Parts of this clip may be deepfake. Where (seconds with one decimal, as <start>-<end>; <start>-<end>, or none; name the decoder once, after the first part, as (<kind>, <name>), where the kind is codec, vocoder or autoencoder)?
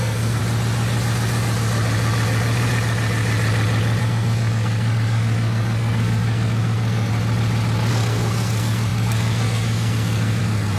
0.0-0.4 (codec, SNAC); 4.0-7.1; 7.9-10.8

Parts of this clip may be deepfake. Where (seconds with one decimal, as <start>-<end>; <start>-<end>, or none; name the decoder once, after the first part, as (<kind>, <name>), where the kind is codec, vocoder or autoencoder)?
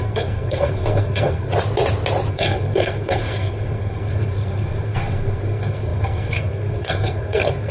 0.0-1.5 (codec, SNAC); 2.3-7.7